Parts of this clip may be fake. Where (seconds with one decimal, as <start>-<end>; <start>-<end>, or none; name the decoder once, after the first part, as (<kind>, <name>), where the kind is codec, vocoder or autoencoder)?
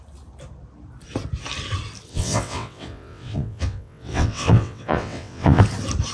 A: 2.1-5.6 (vocoder, WaveNeXt)